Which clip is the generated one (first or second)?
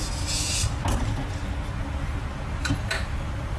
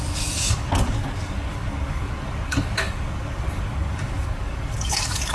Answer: second